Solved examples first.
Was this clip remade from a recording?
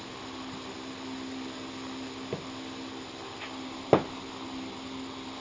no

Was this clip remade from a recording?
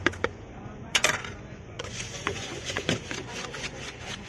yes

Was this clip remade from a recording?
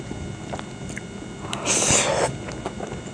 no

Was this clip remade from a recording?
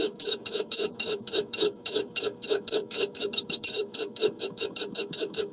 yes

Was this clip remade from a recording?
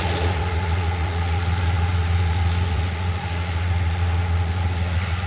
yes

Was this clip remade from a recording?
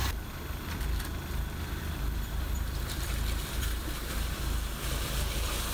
yes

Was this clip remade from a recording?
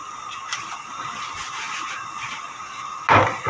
no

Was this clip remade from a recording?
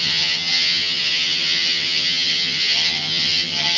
yes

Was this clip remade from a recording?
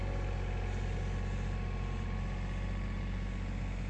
no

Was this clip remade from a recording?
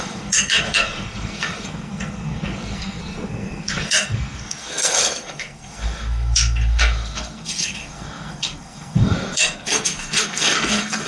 yes